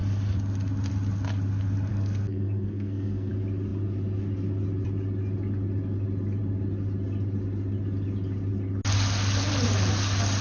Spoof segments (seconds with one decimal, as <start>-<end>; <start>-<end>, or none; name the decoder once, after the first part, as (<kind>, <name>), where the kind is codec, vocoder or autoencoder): 1.9-3.3 (codec, SNAC)

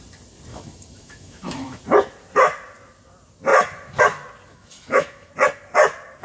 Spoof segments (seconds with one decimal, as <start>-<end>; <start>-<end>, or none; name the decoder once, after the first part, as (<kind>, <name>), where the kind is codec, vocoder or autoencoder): 0.5-1.8 (autoencoder, DAC-VAE); 4.5-5.3

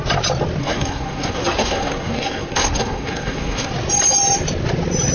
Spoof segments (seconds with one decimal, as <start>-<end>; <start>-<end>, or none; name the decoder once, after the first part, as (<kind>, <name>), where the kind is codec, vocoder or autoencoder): 0.6-3.7 (codec, SNAC)

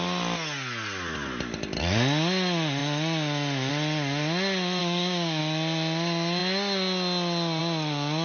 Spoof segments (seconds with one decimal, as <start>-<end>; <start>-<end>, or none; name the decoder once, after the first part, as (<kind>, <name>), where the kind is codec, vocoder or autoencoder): 4.8-5.4 (codec, DAC)

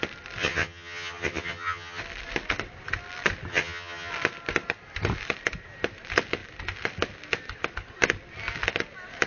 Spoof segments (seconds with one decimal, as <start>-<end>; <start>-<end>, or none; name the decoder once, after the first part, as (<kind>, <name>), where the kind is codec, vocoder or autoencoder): 0.4-2.0 (vocoder, HiFi-GAN); 3.5-4.1

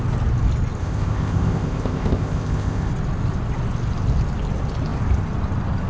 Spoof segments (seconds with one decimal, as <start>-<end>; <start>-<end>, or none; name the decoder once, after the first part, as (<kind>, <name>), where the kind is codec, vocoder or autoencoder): 0.8-2.9 (codec, ZipCodec)

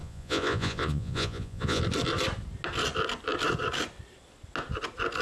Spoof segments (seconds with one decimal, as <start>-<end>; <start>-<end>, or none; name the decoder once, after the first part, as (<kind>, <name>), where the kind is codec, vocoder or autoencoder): 0.0-1.8 (vocoder, Vocos)

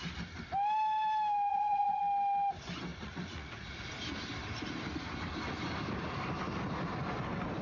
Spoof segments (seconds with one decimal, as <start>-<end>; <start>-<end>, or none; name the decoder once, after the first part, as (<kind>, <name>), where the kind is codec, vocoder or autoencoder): 1.5-2.0 (vocoder, Vocos); 2.9-3.9